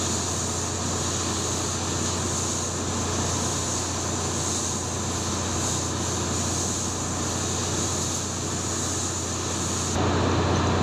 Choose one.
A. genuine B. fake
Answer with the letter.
A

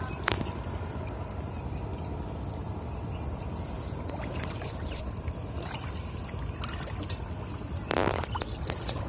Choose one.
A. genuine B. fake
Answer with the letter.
A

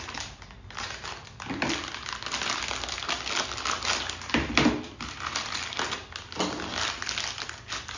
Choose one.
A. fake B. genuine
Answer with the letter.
B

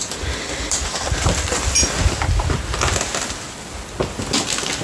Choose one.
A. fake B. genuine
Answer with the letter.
B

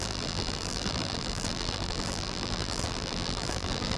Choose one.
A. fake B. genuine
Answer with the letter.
A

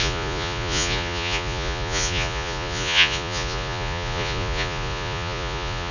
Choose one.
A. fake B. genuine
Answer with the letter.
A